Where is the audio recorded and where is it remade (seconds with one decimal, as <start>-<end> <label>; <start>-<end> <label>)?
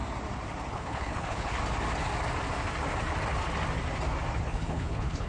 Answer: 0.0-0.7 recorded; 0.7-1.6 remade; 1.6-4.4 recorded; 4.4-5.3 remade